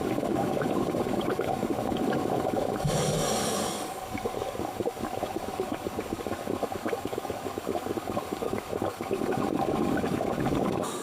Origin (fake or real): fake